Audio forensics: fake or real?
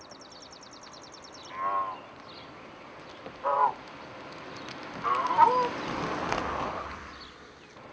real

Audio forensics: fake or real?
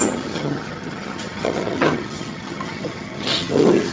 fake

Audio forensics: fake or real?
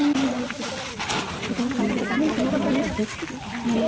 real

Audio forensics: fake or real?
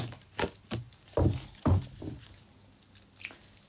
real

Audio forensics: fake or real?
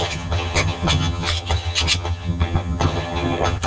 fake